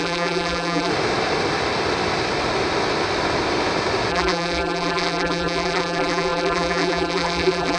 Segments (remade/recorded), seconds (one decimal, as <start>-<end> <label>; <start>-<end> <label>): 0.0-0.9 remade; 0.9-4.1 recorded; 4.1-7.8 remade